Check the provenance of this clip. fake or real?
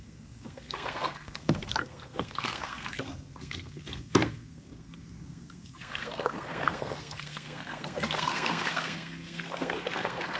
fake